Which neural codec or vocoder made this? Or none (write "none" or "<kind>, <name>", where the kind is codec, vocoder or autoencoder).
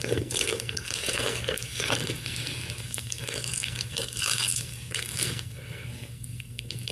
codec, SNAC